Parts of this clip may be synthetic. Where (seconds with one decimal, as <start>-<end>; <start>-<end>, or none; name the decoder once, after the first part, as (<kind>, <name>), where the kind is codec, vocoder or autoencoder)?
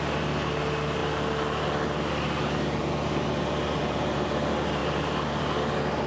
none